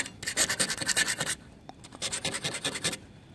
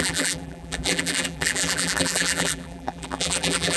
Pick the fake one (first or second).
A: second